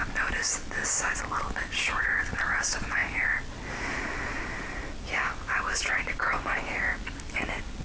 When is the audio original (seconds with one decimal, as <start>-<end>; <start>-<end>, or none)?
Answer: 0.0-7.8